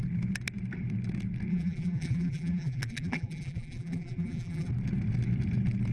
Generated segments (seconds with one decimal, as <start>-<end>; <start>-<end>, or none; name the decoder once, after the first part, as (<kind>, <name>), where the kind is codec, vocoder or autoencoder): 1.5-4.7 (vocoder, BigVGAN v2)